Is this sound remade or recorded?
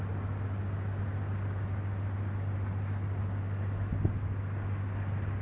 recorded